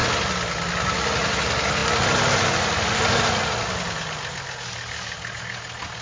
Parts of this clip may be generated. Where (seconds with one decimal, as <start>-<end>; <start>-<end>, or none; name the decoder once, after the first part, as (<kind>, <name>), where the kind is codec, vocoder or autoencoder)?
none